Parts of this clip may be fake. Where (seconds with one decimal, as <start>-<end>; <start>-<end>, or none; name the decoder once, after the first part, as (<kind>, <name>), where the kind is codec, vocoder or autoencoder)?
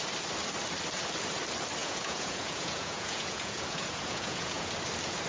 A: 1.8-4.7 (vocoder, Vocos)